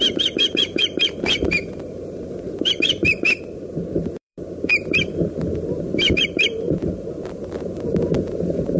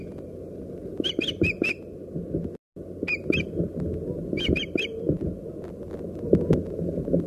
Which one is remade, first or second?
first